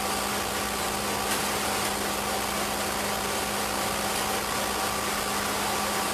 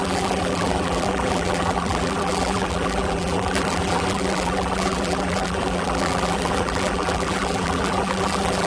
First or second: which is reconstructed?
second